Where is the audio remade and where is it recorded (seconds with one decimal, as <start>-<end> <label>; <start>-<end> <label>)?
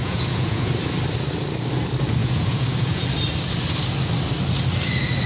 0.0-0.7 remade; 0.7-2.2 recorded; 2.2-3.0 remade; 3.0-5.3 recorded